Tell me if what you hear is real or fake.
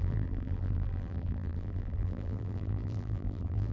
fake